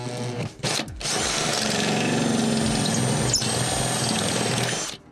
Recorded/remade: recorded